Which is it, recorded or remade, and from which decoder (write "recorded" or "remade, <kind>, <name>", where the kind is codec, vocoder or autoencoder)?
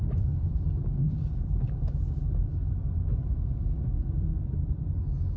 recorded